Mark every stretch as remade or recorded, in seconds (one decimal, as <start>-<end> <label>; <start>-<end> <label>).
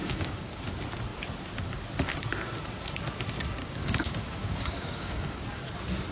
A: 0.0-0.6 remade; 0.6-3.6 recorded; 3.6-5.4 remade; 5.4-6.1 recorded